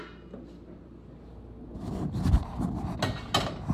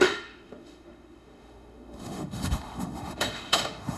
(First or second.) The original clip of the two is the first